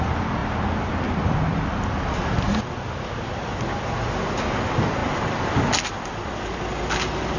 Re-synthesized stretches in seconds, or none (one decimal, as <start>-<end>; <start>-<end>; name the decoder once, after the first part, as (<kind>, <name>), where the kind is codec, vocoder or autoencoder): none